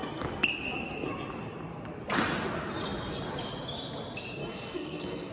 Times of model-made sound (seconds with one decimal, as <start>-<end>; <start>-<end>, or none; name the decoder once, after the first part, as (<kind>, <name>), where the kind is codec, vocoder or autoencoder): 4.4-5.3 (codec, SNAC)